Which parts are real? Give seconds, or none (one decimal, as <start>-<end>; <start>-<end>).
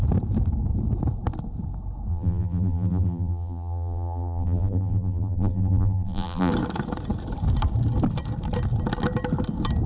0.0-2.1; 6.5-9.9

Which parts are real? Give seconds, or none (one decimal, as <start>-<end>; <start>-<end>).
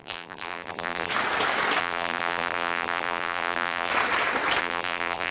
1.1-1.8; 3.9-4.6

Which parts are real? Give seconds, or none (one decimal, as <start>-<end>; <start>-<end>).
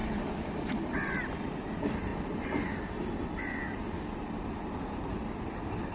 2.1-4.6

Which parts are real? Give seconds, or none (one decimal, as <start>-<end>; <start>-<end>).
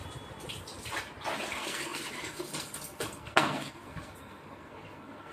0.0-1.5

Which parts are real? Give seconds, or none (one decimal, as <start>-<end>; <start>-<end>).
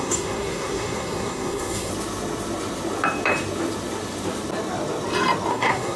1.9-5.5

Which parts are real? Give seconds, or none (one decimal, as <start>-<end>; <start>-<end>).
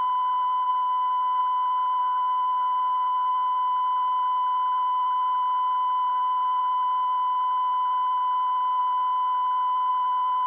0.0-0.7; 1.4-2.0; 3.3-6.1; 6.6-10.5